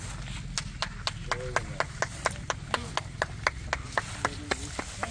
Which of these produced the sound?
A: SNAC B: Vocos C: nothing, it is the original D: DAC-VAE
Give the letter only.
C